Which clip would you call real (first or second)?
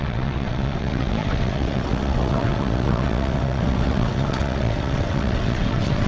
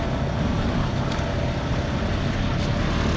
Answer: second